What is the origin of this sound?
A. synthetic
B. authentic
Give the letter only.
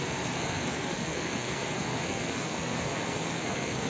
A